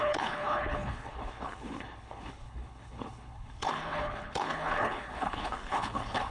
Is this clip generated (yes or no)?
yes